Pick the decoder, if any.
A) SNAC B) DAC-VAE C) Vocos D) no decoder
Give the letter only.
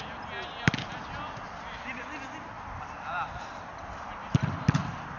D